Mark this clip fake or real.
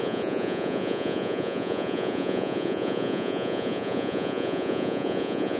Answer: fake